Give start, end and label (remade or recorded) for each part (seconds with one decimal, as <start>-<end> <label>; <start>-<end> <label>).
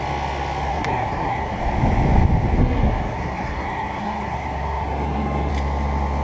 0.0-0.7 recorded; 0.7-1.6 remade; 1.6-2.6 recorded; 2.6-5.5 remade; 5.5-6.2 recorded